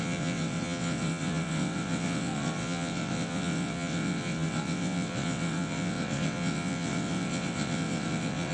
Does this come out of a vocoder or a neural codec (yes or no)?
yes